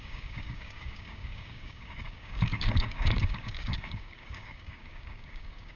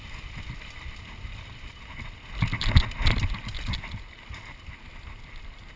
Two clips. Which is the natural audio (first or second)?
second